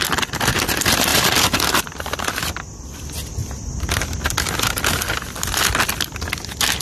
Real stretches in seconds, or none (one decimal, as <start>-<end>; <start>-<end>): 0.0-1.1; 1.8-6.8